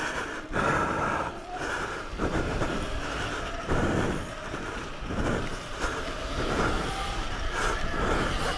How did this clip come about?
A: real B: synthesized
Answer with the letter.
B